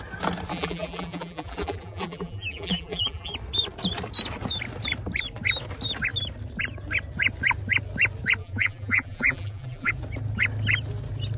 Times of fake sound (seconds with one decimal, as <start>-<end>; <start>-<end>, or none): 0.5-3.3; 8.4-9.9